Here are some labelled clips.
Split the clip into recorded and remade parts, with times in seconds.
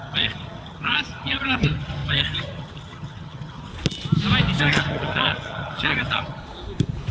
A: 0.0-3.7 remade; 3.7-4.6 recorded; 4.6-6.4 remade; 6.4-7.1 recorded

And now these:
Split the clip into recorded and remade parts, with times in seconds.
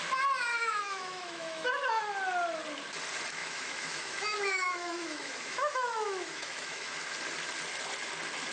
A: 0.0-0.5 recorded; 0.5-2.0 remade; 2.0-3.4 recorded; 3.4-7.0 remade; 7.0-8.5 recorded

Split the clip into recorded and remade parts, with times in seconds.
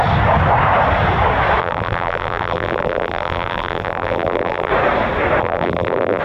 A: 0.0-1.6 recorded; 1.6-4.7 remade; 4.7-5.4 recorded; 5.4-6.2 remade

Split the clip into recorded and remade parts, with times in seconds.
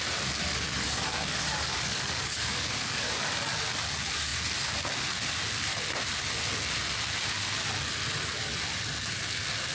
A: 0.0-0.4 recorded; 0.4-3.7 remade; 3.7-9.7 recorded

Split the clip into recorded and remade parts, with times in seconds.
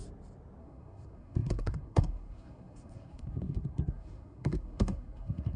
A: 0.0-0.6 recorded; 0.6-5.6 remade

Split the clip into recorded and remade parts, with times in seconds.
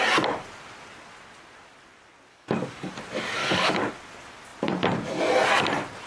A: 0.0-2.3 recorded; 2.3-2.9 remade; 2.9-3.4 recorded; 3.4-3.9 remade; 3.9-6.1 recorded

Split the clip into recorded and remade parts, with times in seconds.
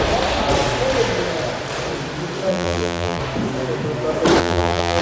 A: 0.0-2.5 recorded; 2.5-3.2 remade; 3.2-4.4 recorded; 4.4-5.0 remade